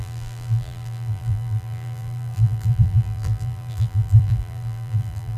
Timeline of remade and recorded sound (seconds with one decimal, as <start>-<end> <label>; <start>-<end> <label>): 0.0-5.4 remade